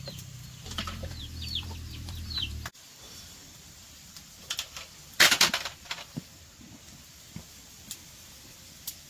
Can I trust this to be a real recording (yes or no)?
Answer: no